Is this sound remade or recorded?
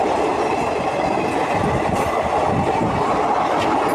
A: recorded